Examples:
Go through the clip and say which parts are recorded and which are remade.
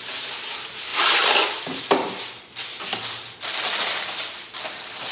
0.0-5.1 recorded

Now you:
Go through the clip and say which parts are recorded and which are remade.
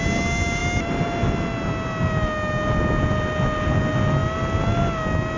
0.0-5.4 recorded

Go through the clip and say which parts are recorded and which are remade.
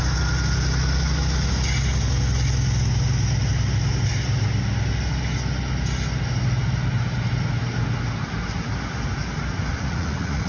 0.0-9.7 recorded; 9.7-10.5 remade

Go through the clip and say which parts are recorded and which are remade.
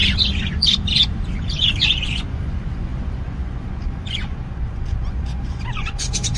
0.0-6.4 remade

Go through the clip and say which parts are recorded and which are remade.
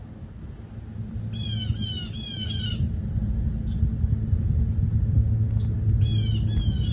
0.0-6.9 recorded